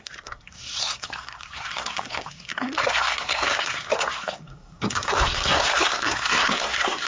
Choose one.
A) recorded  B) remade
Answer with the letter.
B